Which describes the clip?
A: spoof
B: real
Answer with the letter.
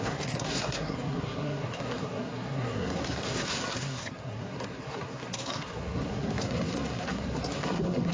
A